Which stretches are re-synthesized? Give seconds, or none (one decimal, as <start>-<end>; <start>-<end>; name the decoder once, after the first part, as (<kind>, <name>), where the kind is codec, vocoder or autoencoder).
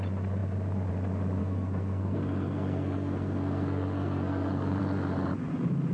1.4-4.8 (codec, SNAC)